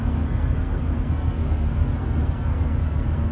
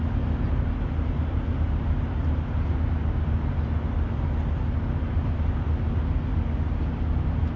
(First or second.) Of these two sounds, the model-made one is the first